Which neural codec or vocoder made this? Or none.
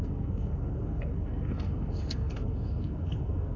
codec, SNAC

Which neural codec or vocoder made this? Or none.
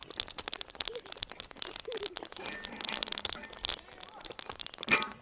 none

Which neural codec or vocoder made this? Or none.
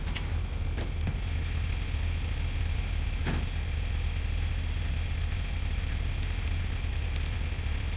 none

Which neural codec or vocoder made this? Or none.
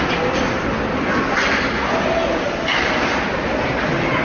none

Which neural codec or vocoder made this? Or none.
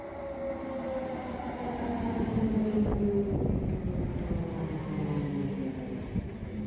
none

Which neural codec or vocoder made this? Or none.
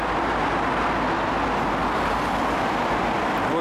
none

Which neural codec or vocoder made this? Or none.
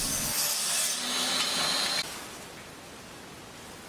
none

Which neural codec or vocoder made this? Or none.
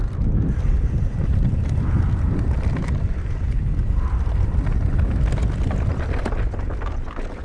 none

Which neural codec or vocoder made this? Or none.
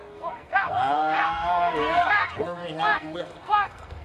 codec, SNAC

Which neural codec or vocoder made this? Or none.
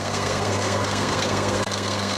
codec, SNAC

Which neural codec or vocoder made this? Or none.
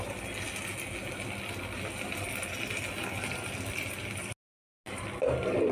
none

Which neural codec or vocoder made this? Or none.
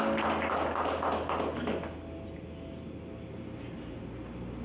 none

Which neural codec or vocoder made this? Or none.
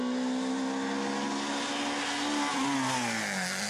none